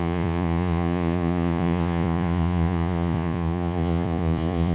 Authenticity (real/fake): fake